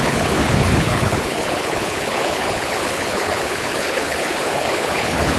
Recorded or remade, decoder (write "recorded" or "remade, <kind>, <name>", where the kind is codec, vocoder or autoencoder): remade, codec, HILCodec